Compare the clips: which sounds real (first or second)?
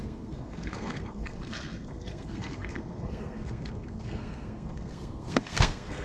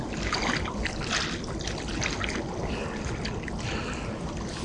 second